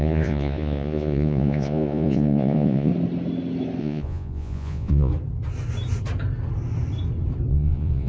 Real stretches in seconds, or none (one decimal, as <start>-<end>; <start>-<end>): 2.9-3.8; 5.1-7.5